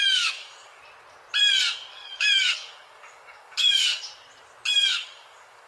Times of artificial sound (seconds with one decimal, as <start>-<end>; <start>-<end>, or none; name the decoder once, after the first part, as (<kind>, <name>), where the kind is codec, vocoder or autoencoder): 0.0-0.8 (codec, DAC); 1.9-4.1; 4.9-5.7